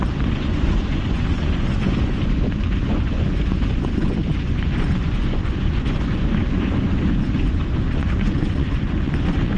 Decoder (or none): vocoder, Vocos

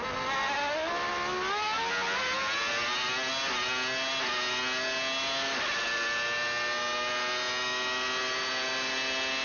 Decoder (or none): none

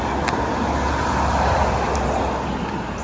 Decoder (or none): none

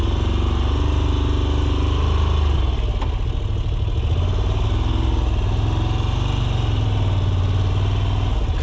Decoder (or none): none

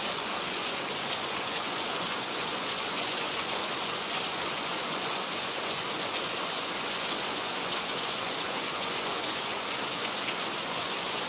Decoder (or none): vocoder, Vocos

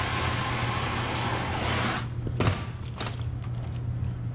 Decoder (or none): none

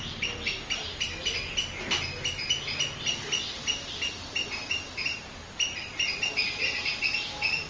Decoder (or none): none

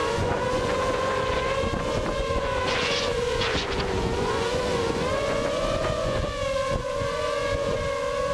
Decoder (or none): vocoder, Vocos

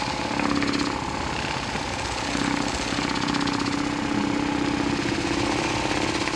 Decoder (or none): none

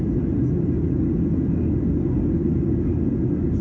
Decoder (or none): none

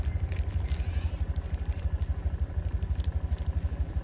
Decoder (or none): none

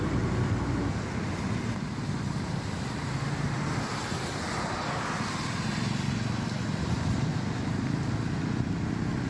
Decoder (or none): none